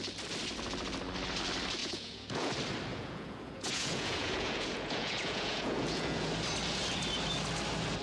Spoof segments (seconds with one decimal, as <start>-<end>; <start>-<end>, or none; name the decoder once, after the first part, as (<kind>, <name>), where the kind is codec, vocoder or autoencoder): 1.8-2.5 (vocoder, Vocos); 2.9-6.3